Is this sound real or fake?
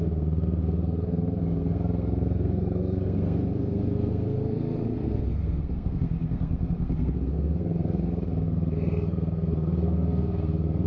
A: fake